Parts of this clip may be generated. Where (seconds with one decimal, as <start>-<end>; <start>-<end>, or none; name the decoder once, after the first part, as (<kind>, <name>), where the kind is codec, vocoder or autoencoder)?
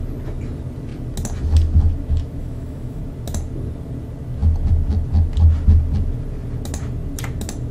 2.4-3.0 (autoencoder, DAC-VAE)